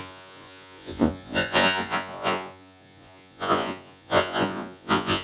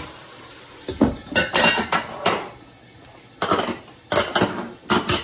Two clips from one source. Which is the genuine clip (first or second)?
second